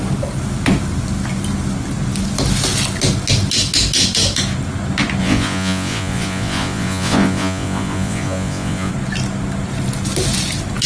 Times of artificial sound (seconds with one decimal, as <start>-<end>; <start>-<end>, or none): 5.2-8.9